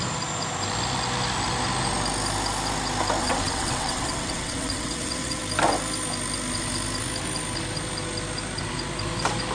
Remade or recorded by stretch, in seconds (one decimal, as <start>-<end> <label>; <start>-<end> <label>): 0.0-3.2 recorded; 3.2-5.4 remade; 5.4-9.5 recorded